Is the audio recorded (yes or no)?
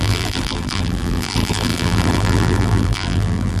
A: no